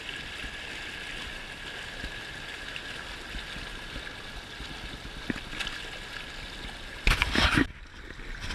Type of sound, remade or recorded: recorded